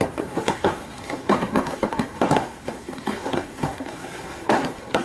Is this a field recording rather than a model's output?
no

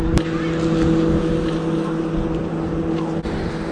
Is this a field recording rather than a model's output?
yes